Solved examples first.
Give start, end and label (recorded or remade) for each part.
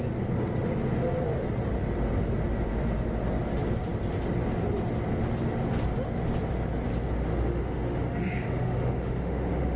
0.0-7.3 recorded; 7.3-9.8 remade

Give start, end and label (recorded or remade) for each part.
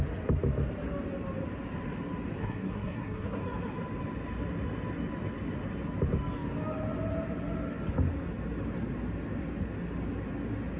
0.0-2.4 recorded; 2.4-3.4 remade; 3.4-10.8 recorded